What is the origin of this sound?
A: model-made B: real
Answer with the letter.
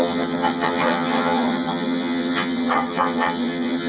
A